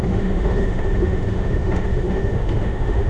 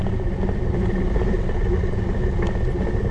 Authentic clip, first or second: second